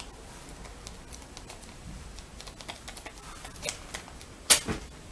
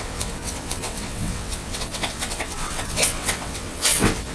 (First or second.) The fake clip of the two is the second